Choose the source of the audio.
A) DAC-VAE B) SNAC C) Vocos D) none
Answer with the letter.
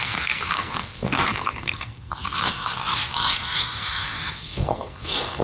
B